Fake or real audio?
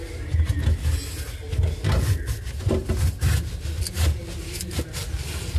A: real